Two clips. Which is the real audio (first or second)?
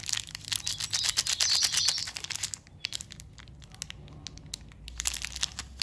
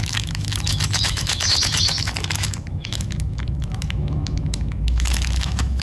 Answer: first